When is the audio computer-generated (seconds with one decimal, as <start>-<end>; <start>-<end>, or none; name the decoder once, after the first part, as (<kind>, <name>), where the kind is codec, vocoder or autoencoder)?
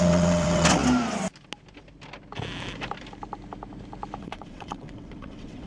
0.0-0.8 (vocoder, WaveNeXt); 4.2-5.7